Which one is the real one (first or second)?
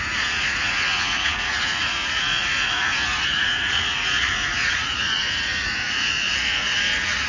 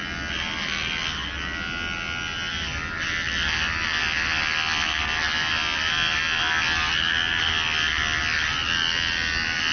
second